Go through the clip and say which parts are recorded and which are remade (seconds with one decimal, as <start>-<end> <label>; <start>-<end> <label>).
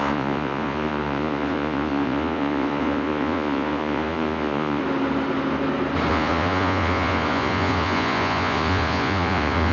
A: 0.0-4.8 remade; 4.8-6.1 recorded; 6.1-9.7 remade